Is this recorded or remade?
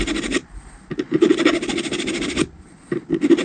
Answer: recorded